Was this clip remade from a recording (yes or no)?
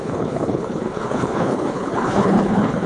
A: yes